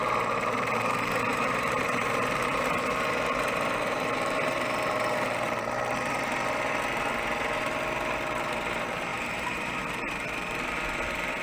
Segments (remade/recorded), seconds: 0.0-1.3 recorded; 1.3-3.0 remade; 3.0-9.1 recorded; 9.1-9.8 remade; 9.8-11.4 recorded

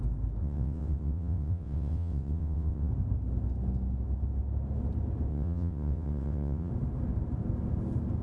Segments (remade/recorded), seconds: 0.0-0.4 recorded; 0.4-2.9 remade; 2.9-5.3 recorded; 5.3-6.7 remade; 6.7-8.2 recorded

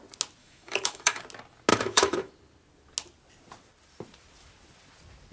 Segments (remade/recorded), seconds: 0.0-0.4 recorded; 0.4-1.2 remade; 1.2-1.7 recorded; 1.7-2.3 remade; 2.3-5.3 recorded

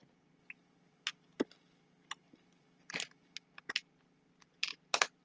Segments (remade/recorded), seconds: 0.0-5.2 recorded

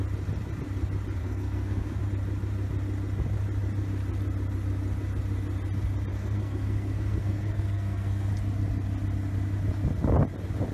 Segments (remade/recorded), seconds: 0.0-1.2 recorded; 1.2-2.0 remade; 2.0-6.1 recorded; 6.1-8.3 remade; 8.3-10.7 recorded

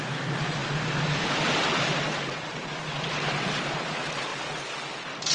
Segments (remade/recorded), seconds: 0.0-5.3 recorded